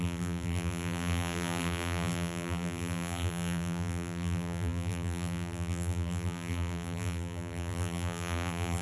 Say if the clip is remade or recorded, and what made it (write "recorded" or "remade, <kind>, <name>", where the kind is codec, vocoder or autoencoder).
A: remade, vocoder, BigVGAN v2